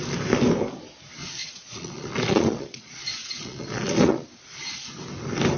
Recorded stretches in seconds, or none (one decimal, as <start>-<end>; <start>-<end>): 0.0-1.4; 4.3-5.6